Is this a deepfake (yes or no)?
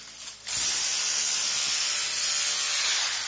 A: no